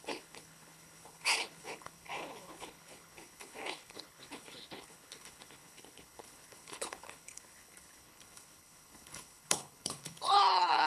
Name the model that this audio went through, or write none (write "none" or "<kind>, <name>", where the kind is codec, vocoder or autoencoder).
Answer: codec, HILCodec